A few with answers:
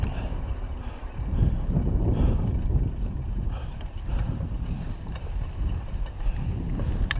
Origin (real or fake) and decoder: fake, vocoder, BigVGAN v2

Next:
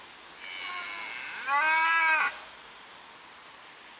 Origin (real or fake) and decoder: real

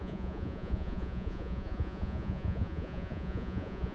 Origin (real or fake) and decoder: fake, vocoder, Vocos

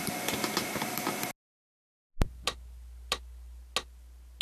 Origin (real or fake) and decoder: real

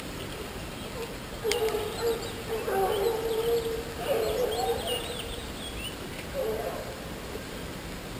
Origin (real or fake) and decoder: real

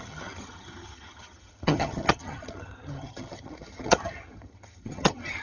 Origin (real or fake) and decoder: fake, vocoder, HiFi-GAN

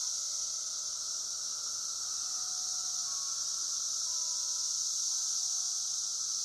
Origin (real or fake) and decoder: real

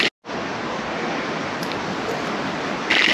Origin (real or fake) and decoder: real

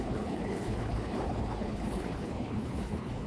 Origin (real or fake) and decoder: fake, codec, HILCodec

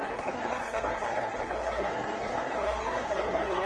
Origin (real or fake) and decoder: fake, codec, SNAC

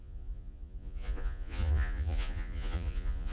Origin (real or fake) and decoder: fake, vocoder, Vocos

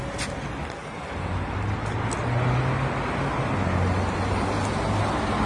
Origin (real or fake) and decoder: real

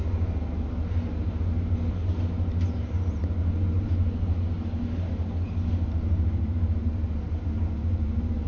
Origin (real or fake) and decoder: real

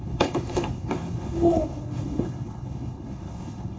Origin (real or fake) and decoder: fake, codec, HILCodec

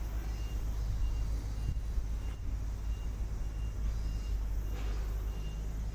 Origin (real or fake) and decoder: real